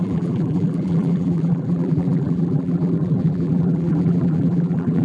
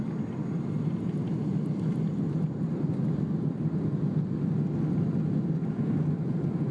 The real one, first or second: second